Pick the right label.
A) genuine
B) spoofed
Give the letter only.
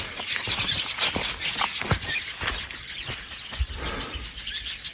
A